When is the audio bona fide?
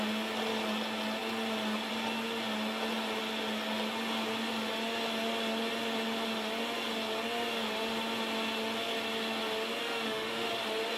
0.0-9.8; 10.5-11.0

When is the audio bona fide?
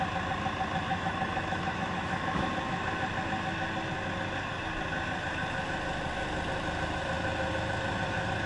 0.0-0.9; 2.5-8.5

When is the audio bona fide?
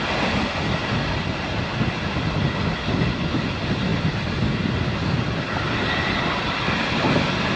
0.0-7.6